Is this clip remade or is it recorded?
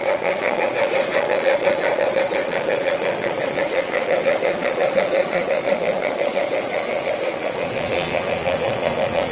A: remade